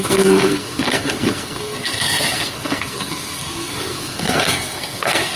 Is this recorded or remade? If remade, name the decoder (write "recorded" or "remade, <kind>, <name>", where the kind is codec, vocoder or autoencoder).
remade, codec, SNAC